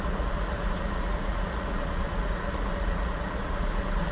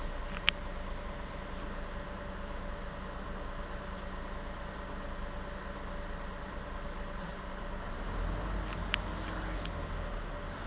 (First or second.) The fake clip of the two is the first